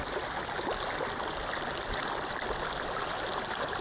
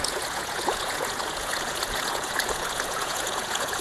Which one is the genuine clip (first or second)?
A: first